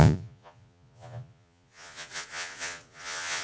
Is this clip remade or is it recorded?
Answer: remade